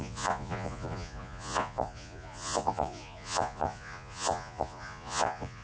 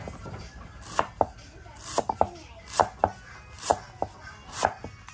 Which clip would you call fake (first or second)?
first